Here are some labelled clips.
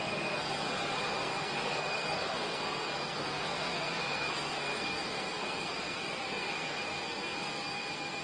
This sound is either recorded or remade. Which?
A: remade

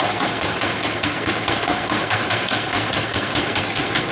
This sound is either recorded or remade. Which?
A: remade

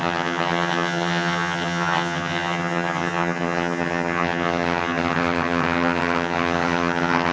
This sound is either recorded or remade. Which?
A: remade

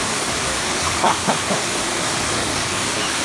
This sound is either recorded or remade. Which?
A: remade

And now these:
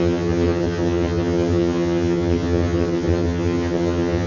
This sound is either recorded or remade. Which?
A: remade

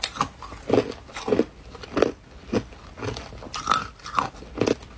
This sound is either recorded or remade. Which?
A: recorded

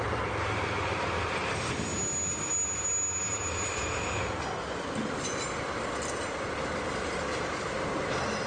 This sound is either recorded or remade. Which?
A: recorded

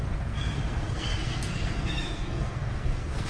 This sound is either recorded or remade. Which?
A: remade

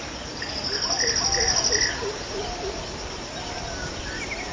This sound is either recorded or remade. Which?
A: recorded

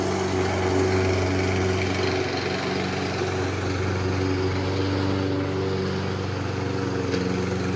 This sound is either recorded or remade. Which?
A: recorded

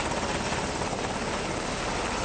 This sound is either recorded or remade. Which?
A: recorded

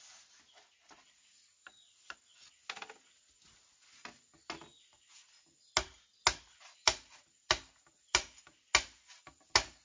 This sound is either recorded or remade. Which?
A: recorded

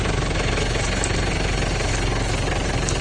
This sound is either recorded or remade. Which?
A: recorded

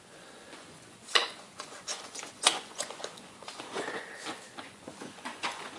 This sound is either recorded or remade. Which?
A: remade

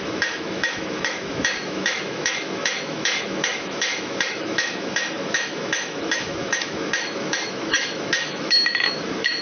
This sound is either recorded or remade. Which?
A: remade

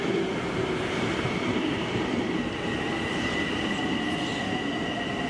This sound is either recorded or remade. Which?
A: recorded